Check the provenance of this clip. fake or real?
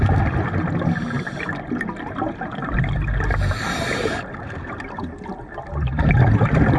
real